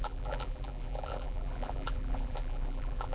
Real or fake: fake